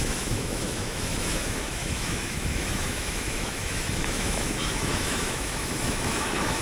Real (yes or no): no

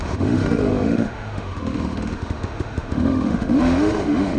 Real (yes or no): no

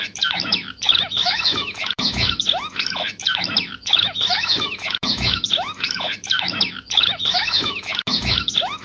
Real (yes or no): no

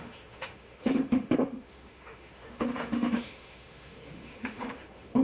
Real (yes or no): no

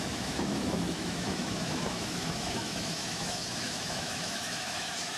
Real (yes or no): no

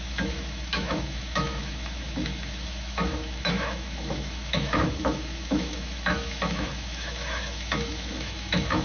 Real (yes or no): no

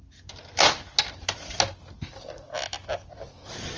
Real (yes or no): yes